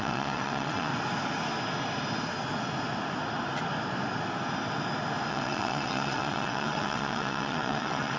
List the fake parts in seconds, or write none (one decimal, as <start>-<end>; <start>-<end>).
0.0-0.9; 5.3-8.2